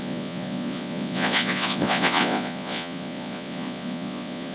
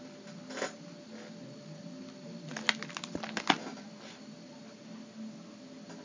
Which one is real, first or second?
second